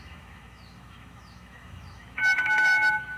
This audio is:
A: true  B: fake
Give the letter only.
B